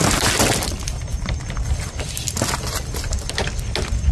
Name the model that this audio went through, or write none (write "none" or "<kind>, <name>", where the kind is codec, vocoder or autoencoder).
none